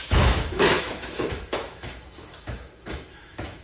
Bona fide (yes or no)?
no